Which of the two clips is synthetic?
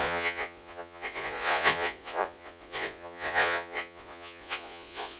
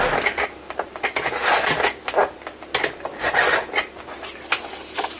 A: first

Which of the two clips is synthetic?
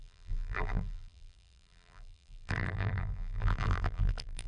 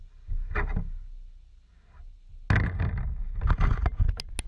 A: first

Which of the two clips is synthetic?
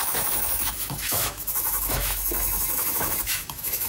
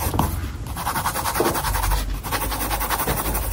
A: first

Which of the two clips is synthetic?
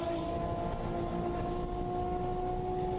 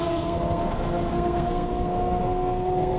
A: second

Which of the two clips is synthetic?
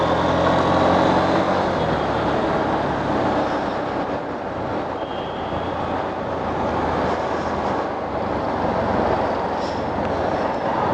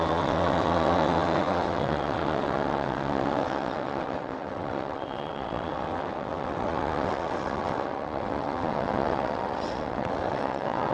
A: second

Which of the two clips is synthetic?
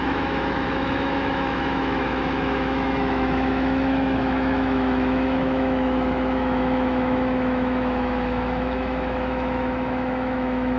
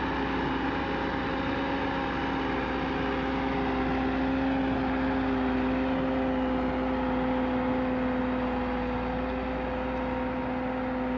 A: first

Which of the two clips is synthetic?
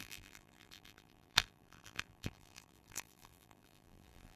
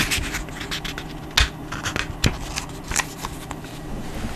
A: first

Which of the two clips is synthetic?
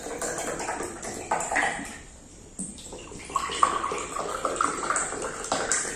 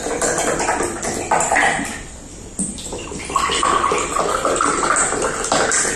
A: first